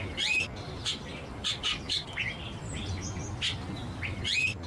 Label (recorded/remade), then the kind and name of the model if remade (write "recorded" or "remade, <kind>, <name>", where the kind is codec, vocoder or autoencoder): recorded